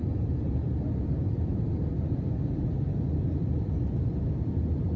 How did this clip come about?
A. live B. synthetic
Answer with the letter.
A